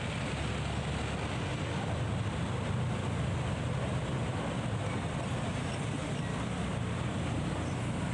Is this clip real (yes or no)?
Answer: yes